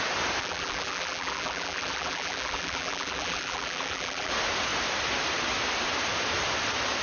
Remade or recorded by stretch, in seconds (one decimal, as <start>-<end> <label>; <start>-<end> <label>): 0.0-0.4 recorded; 0.4-4.3 remade; 4.3-7.0 recorded